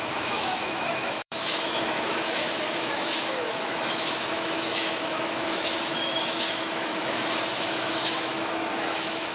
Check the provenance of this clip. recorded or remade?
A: remade